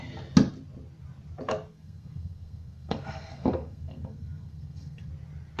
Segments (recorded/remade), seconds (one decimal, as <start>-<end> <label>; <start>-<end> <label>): 0.0-1.7 recorded; 1.7-5.1 remade; 5.1-5.6 recorded